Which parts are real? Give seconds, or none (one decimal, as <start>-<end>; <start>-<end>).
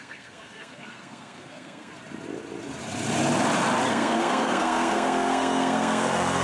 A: 1.9-3.9